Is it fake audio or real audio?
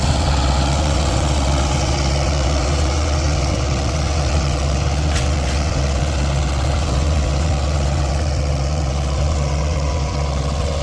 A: fake